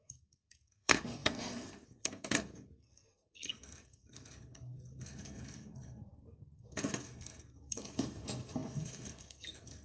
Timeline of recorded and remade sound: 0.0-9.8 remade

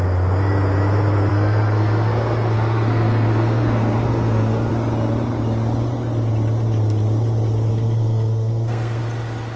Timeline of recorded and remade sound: 0.0-1.3 recorded; 1.3-4.7 remade; 4.7-7.7 recorded; 7.7-9.0 remade; 9.0-9.6 recorded

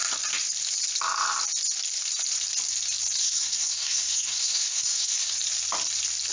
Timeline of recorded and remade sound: 0.0-3.2 recorded; 3.2-5.3 remade; 5.3-6.3 recorded

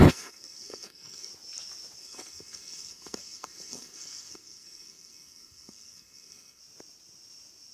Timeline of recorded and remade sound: 0.0-1.3 remade; 1.3-2.0 recorded; 2.0-6.6 remade; 6.6-7.7 recorded

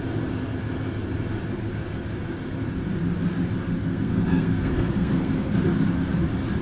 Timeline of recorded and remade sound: 0.0-3.8 recorded; 3.8-5.5 remade; 5.5-6.6 recorded